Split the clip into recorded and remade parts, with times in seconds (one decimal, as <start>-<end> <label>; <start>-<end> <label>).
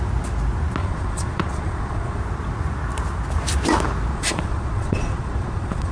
0.0-0.8 recorded; 0.8-2.2 remade; 2.2-4.1 recorded; 4.1-5.9 remade